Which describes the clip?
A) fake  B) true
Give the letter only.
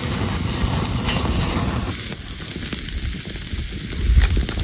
B